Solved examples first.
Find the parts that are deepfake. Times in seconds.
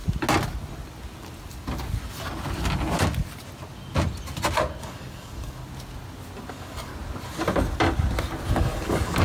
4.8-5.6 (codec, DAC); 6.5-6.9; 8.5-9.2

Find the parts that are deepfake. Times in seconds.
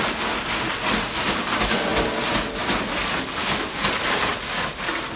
none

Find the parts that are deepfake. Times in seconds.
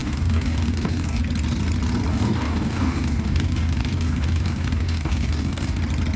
0.0-1.2 (codec, DAC); 2.1-5.8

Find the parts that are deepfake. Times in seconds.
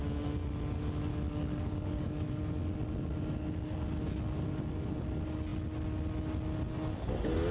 1.1-2.4 (codec, DAC)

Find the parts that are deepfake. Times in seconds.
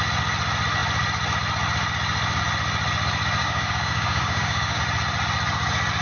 3.4-4.8 (codec, DAC)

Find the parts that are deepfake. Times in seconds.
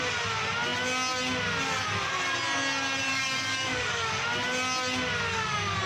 3.1-4.2 (codec, DAC); 5.3-5.9